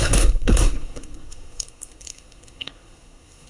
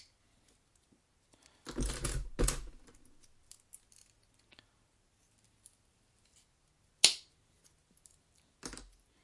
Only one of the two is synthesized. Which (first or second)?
first